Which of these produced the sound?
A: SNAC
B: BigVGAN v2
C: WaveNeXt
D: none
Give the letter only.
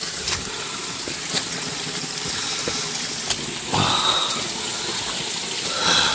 D